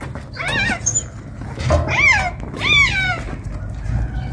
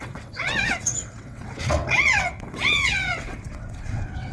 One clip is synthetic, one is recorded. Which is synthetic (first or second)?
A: second